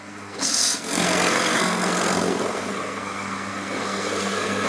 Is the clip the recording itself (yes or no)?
no